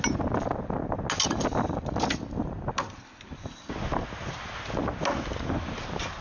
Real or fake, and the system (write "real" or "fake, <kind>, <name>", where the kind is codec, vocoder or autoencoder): real